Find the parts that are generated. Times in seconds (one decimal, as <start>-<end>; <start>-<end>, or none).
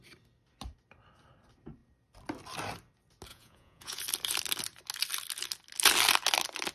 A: 3.3-4.0